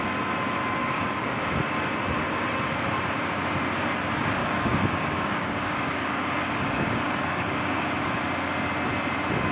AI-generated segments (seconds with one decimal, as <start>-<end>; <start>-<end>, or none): 0.8-1.5; 4.4-8.2